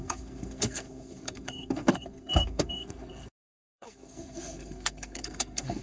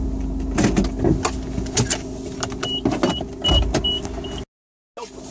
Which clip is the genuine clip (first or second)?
second